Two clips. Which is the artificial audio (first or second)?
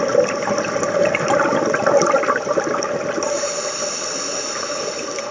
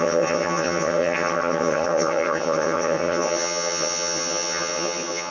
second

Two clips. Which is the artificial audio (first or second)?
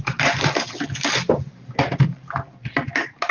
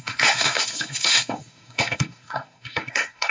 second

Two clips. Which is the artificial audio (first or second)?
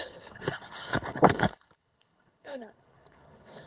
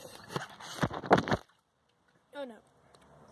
first